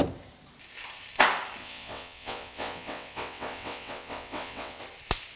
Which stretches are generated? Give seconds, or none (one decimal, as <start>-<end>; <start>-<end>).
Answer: 1.6-4.8

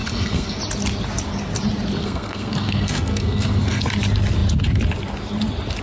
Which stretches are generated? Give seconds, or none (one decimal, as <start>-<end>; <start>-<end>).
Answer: 0.0-0.6; 2.0-3.8

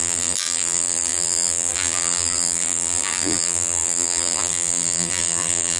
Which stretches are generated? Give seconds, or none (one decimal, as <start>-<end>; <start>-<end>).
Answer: 0.0-5.8

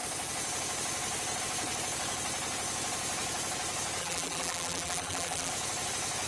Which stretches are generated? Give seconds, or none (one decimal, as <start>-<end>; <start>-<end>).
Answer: 4.0-5.5